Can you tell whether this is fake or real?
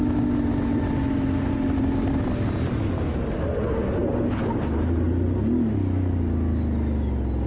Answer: real